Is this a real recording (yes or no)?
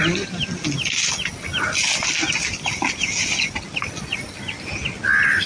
yes